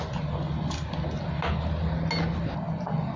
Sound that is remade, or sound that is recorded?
recorded